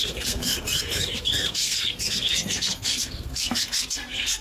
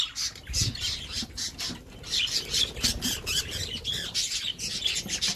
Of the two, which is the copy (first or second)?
first